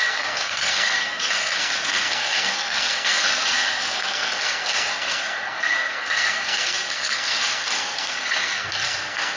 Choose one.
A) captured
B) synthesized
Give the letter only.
B